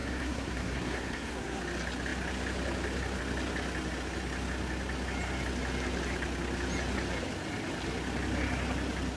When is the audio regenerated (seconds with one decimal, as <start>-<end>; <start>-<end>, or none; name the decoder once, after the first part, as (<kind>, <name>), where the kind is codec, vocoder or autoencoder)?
0.0-1.6 (codec, SNAC)